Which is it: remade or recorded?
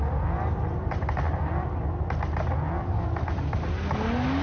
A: recorded